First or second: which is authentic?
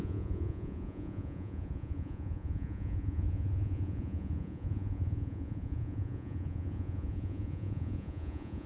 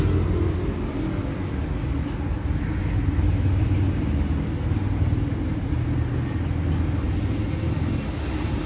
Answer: second